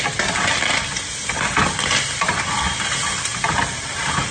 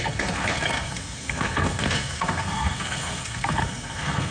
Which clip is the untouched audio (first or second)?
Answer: first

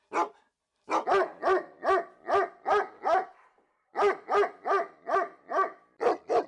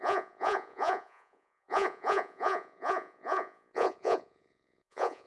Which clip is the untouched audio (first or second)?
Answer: first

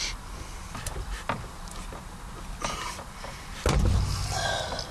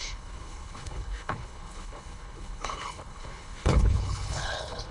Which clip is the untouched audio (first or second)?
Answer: first